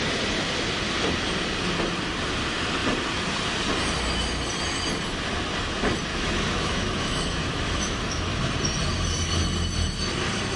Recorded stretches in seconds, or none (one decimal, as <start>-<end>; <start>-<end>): 0.0-6.1; 8.4-10.6